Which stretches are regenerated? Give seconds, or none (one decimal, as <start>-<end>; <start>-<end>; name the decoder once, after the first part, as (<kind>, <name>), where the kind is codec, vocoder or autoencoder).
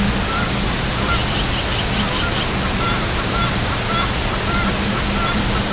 none